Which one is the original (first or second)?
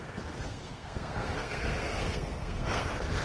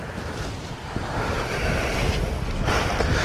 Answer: second